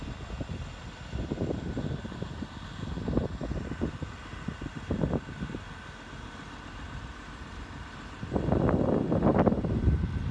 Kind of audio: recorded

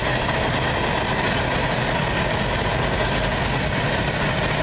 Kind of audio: recorded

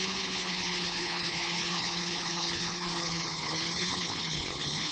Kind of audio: remade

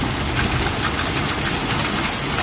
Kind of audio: recorded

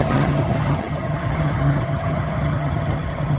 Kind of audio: remade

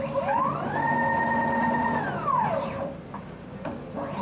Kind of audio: remade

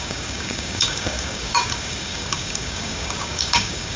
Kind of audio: remade